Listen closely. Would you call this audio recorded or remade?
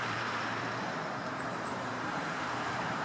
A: remade